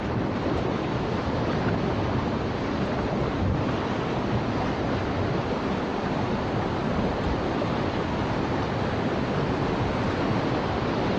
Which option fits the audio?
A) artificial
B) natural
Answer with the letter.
B